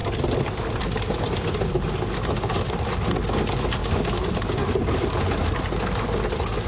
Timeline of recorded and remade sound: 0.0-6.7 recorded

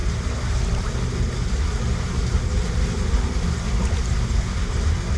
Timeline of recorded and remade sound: 0.0-5.2 recorded

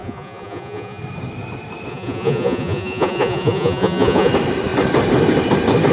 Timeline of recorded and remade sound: 0.0-1.0 remade; 1.0-1.9 recorded; 1.9-4.3 remade; 4.3-5.9 recorded

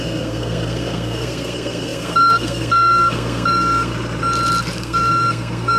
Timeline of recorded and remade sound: 0.0-3.9 remade; 3.9-4.8 recorded; 4.8-5.8 remade

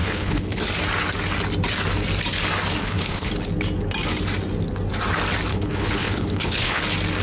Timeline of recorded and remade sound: 0.0-0.6 remade; 0.6-2.8 recorded; 2.8-3.3 remade; 3.3-5.5 recorded; 5.5-6.8 remade; 6.8-7.2 recorded

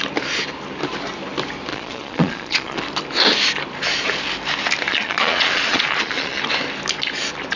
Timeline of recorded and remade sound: 0.0-1.7 recorded; 1.7-2.8 remade; 2.8-4.9 recorded; 4.9-6.4 remade; 6.4-7.6 recorded